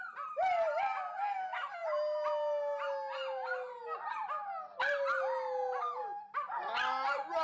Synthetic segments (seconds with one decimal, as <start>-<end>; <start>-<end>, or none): none